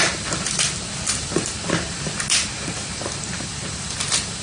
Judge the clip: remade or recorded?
recorded